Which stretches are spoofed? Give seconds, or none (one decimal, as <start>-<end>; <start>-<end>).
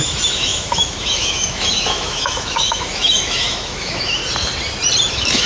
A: 0.0-4.2; 5.1-5.5